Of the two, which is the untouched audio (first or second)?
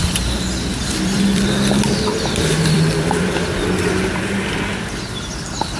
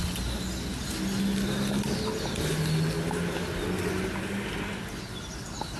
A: second